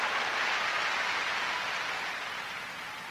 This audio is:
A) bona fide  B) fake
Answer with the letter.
A